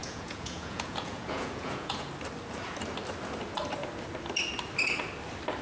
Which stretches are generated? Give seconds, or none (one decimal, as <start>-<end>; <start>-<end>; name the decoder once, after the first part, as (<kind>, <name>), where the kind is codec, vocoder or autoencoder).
0.0-2.1 (vocoder, Vocos)